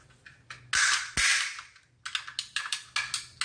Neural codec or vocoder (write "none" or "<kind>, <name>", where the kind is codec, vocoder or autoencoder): none